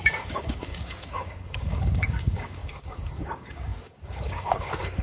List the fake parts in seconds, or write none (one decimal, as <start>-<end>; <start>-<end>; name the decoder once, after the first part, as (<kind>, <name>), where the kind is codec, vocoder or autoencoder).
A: 0.0-5.0 (codec, DAC)